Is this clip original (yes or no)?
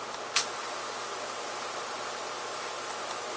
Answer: yes